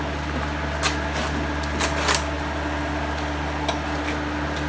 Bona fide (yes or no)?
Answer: yes